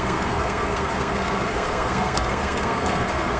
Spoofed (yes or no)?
yes